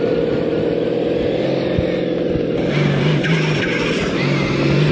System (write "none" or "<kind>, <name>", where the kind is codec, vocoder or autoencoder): none